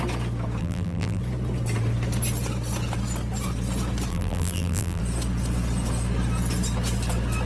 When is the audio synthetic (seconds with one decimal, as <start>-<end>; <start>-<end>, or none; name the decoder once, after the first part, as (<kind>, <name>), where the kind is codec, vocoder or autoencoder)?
0.6-1.2 (vocoder, BigVGAN v2); 4.1-5.0